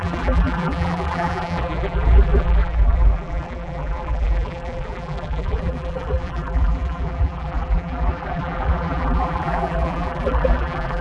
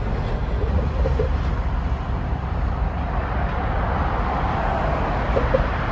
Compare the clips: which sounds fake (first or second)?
first